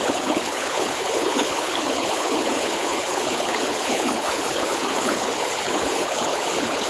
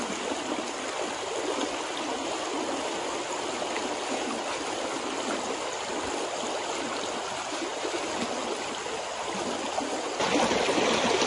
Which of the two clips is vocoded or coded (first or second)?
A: first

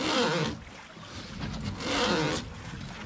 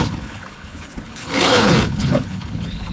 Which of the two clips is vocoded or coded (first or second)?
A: second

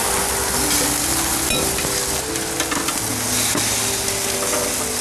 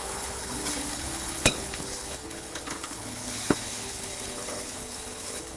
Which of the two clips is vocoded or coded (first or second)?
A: second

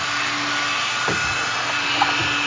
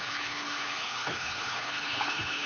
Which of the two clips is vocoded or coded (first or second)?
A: second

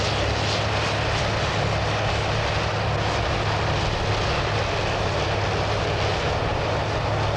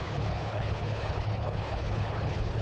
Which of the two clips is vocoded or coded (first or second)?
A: second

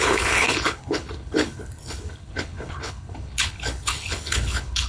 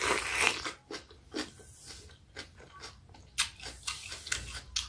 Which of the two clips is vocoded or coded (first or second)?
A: first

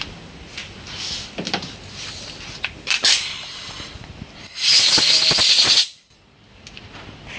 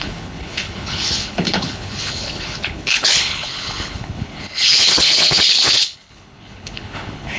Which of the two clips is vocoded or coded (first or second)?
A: second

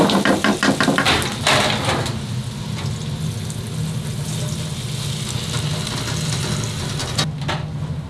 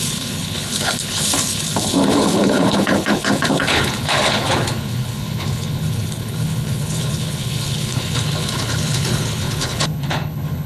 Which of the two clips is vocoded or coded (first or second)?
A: second